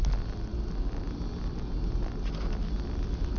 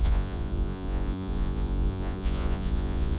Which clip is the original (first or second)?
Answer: first